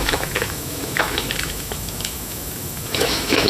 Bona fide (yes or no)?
no